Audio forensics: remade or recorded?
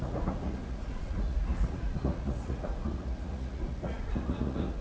remade